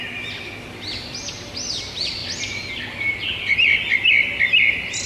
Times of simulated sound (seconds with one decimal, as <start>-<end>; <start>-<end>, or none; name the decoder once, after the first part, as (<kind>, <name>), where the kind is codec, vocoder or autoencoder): none